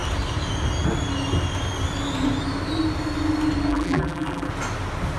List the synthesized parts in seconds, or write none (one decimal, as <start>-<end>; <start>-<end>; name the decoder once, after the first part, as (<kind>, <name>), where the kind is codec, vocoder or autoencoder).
3.7-4.5 (vocoder, BigVGAN v2)